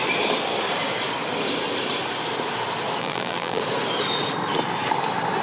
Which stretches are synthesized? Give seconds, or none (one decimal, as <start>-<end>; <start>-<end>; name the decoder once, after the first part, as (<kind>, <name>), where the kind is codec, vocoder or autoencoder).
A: 3.0-3.6 (vocoder, BigVGAN v2)